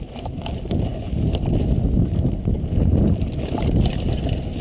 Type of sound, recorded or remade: recorded